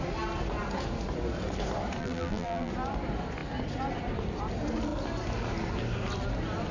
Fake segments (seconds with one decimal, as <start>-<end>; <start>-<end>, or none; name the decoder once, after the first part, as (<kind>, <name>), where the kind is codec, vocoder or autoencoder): 2.0-2.7 (vocoder, BigVGAN v2)